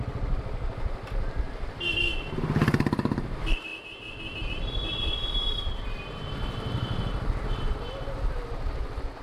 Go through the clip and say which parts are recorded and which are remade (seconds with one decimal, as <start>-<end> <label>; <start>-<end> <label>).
0.0-9.2 recorded